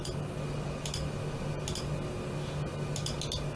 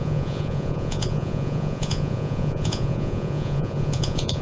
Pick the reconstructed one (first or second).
second